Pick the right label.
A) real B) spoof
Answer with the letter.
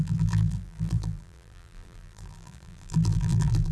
B